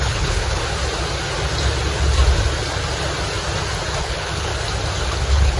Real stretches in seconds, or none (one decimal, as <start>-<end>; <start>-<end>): 0.6-4.0; 4.5-5.1